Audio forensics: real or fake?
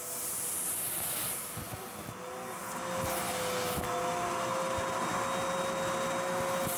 real